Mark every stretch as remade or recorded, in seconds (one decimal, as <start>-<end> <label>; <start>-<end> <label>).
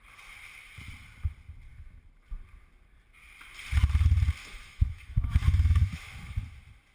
0.0-4.4 recorded; 4.4-6.4 remade; 6.4-6.9 recorded